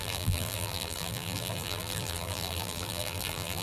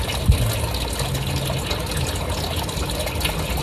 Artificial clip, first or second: first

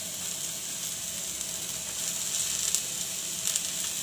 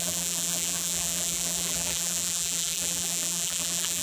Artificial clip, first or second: second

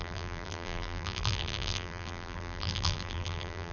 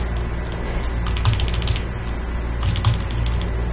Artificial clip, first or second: first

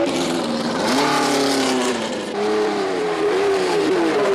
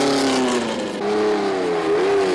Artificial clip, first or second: first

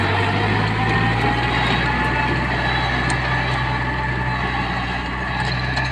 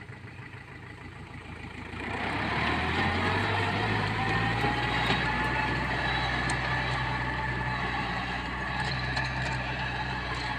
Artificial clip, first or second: second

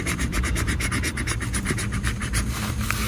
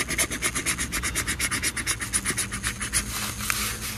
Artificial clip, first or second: first